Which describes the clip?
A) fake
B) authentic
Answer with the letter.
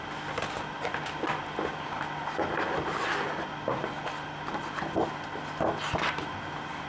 B